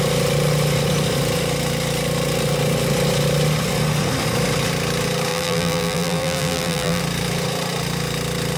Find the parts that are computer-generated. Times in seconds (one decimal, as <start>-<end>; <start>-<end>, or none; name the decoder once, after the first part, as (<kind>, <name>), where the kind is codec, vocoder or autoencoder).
5.3-7.0 (vocoder, BigVGAN v2)